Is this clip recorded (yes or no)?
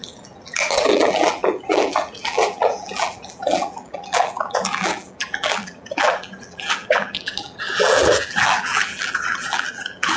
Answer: no